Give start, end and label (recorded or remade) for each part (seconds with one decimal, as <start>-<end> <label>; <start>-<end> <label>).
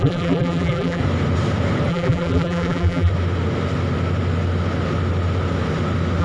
0.0-1.0 remade; 1.0-1.9 recorded; 1.9-3.1 remade; 3.1-6.2 recorded